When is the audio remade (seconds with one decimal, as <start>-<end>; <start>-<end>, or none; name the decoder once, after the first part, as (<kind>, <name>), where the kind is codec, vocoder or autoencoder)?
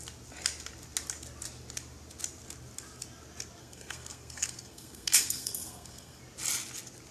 3.6-6.2 (codec, SNAC)